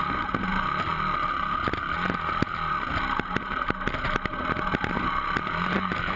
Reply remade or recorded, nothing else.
recorded